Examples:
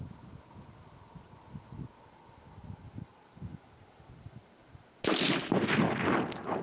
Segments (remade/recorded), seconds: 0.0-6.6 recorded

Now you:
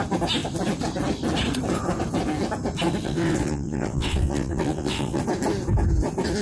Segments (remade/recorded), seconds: 0.0-3.0 recorded; 3.0-5.2 remade; 5.2-6.4 recorded

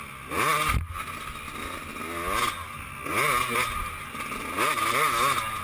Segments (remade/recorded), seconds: 0.0-5.6 recorded

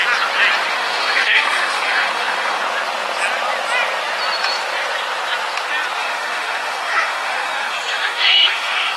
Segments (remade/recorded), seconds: 0.0-0.7 recorded; 0.7-2.6 remade; 2.6-6.0 recorded; 6.0-9.0 remade